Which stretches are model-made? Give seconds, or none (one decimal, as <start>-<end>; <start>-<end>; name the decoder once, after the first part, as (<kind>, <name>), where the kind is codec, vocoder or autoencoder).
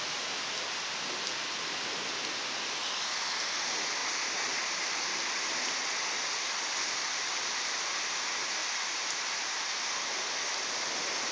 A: 4.0-6.2 (vocoder, BigVGAN v2); 8.6-9.8